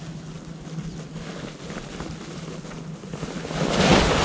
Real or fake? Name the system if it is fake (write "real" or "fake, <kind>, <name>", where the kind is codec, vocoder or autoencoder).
real